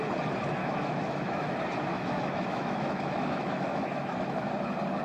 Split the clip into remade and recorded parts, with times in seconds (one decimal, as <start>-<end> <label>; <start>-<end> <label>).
0.0-0.6 recorded; 0.6-1.5 remade; 1.5-1.9 recorded; 1.9-4.5 remade; 4.5-5.0 recorded